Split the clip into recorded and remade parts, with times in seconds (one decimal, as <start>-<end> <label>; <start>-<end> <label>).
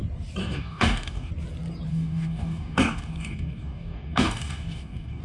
0.0-0.4 recorded; 0.4-1.3 remade; 1.3-1.9 recorded; 1.9-5.2 remade